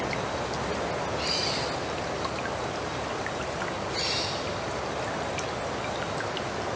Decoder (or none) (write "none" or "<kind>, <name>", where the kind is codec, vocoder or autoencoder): none